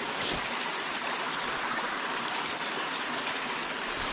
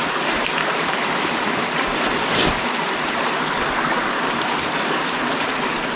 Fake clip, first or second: first